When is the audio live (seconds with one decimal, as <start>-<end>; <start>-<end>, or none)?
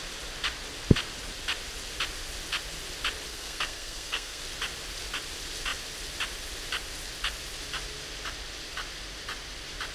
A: 0.0-3.3; 4.4-9.9